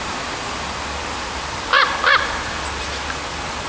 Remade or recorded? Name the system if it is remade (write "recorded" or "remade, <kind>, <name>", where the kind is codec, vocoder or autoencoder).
recorded